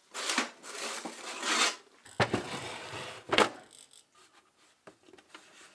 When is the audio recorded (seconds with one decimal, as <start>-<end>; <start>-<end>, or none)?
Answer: 0.0-5.7